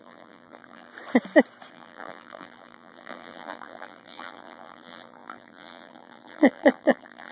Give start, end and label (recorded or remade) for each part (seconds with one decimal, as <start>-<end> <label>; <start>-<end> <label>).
0.0-0.9 remade; 0.9-1.7 recorded; 1.7-7.3 remade